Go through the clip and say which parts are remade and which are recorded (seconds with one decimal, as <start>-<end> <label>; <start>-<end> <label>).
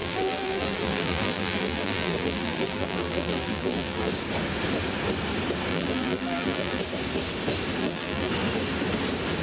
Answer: 0.0-4.1 remade; 4.1-5.7 recorded; 5.7-6.8 remade; 6.8-7.8 recorded; 7.8-8.3 remade; 8.3-9.4 recorded